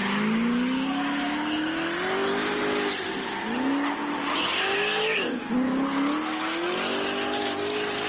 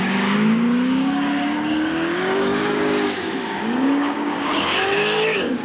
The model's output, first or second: second